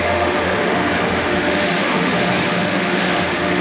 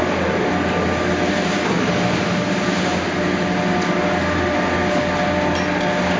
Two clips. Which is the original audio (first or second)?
second